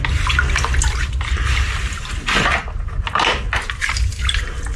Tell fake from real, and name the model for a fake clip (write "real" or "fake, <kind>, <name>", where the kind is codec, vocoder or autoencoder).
real